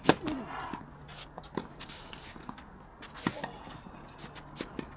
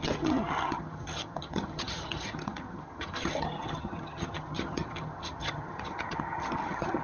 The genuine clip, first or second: first